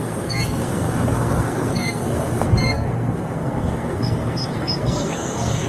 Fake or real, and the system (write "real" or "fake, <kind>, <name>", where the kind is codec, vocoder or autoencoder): fake, codec, SNAC